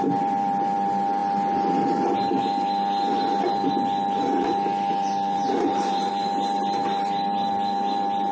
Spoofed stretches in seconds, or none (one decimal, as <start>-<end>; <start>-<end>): 4.9-6.1

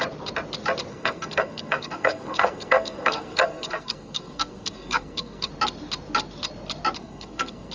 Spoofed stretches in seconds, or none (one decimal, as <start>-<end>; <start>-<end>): 0.9-5.5; 7.0-7.7

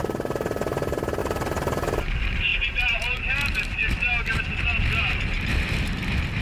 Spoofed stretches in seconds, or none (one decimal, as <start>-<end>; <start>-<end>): none